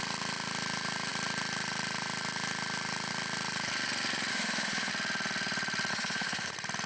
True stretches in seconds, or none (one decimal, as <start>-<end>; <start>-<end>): 0.0-4.3; 4.9-5.9; 6.5-6.9